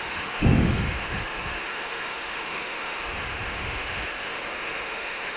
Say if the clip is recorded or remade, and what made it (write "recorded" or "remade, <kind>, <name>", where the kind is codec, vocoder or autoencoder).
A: remade, autoencoder, DAC-VAE